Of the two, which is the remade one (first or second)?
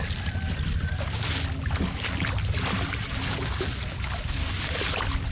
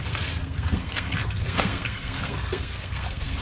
second